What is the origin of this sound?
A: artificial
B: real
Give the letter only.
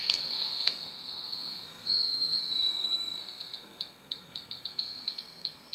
A